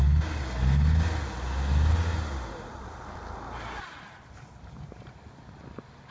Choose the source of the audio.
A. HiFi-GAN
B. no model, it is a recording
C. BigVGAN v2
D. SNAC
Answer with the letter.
B